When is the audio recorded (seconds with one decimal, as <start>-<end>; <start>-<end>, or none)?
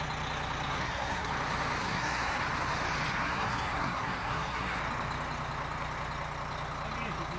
0.0-0.7; 1.3-1.8; 2.4-3.2; 4.8-7.4